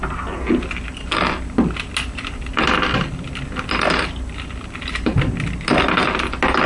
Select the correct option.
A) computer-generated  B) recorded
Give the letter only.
B